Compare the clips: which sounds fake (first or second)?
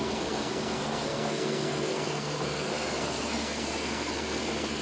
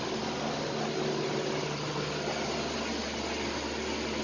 first